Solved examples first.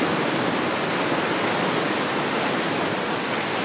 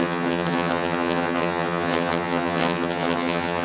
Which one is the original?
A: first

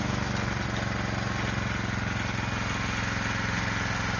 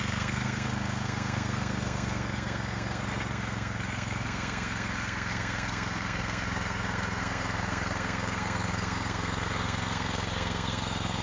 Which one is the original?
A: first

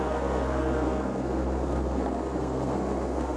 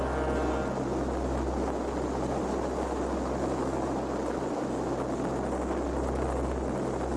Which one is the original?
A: second